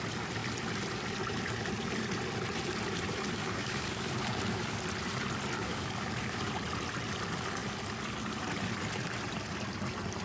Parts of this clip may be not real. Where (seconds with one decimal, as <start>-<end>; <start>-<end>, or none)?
3.4-4.8; 5.6-6.5